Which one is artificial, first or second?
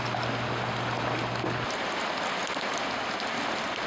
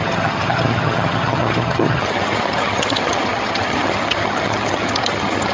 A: second